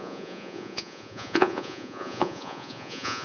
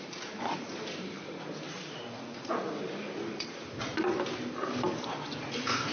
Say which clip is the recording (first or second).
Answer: second